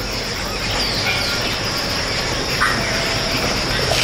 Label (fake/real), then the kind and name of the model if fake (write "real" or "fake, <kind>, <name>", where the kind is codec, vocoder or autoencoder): real